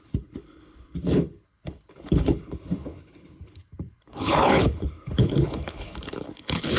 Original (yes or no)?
no